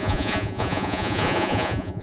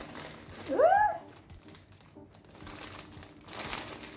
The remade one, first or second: first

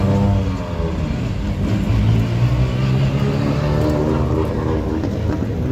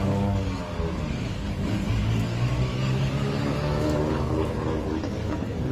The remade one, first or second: second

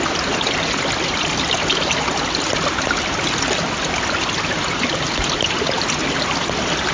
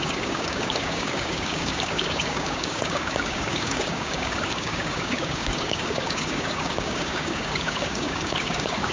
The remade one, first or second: second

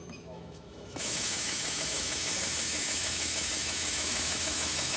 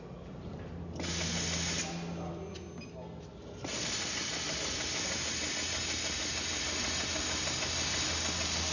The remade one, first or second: first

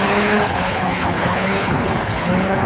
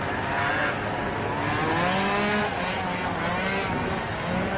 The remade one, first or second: first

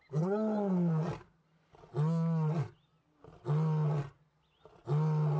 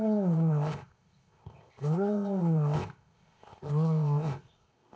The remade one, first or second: second